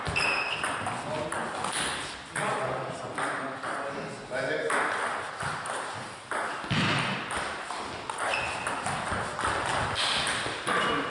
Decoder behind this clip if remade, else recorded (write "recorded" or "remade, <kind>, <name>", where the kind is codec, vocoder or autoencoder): recorded